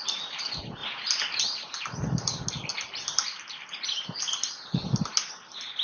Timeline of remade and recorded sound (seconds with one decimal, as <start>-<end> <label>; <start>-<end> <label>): 0.0-2.7 recorded; 2.7-5.0 remade; 5.0-5.8 recorded